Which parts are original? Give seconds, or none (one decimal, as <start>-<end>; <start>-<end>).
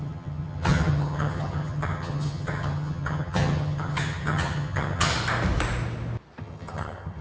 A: 5.1-6.4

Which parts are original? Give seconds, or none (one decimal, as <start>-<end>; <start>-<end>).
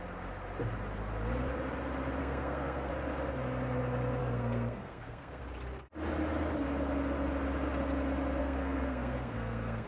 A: 0.0-2.2; 2.9-4.2; 5.4-8.4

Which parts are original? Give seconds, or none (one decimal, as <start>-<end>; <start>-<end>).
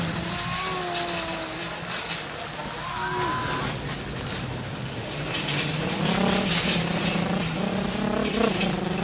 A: 0.0-9.0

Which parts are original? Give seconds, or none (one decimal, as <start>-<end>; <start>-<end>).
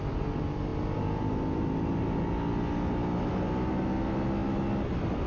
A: 0.0-5.3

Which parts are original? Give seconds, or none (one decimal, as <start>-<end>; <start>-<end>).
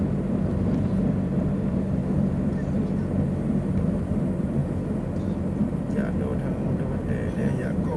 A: 2.0-3.7; 4.6-7.3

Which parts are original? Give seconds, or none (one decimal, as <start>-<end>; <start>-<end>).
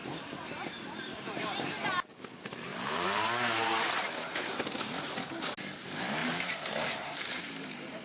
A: 3.7-5.8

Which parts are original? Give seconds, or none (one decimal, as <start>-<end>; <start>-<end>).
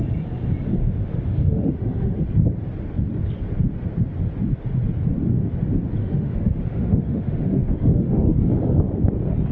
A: 0.0-0.8; 2.2-6.0; 8.4-9.5